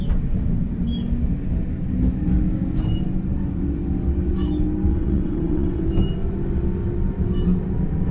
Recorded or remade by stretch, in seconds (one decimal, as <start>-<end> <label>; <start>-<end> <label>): 0.0-4.9 recorded; 4.9-5.8 remade; 5.8-8.1 recorded